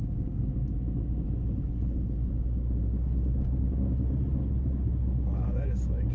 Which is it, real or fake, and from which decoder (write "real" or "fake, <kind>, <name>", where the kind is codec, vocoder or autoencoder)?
real